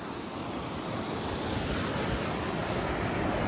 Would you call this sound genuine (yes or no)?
yes